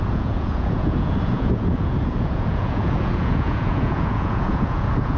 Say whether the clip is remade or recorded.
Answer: remade